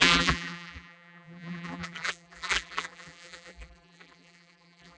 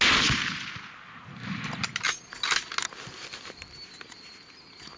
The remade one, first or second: first